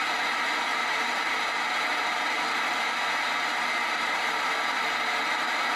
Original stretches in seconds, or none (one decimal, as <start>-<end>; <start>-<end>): 0.0-5.8